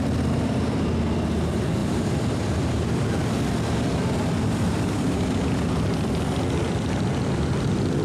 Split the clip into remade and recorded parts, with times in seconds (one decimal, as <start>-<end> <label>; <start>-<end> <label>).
0.0-1.8 recorded; 1.8-5.5 remade; 5.5-8.0 recorded

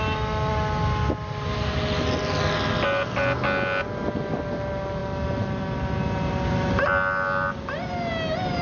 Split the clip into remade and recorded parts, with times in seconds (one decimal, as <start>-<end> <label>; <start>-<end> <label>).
0.0-8.6 recorded

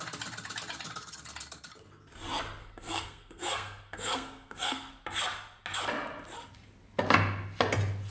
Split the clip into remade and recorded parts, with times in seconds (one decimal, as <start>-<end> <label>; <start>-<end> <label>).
0.0-2.6 recorded; 2.6-4.9 remade; 4.9-8.1 recorded

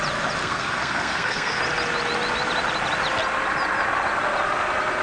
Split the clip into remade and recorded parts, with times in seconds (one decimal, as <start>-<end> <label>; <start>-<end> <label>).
0.0-0.4 recorded; 0.4-1.6 remade; 1.6-5.0 recorded